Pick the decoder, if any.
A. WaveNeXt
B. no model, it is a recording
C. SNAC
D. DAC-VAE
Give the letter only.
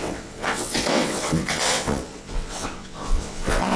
A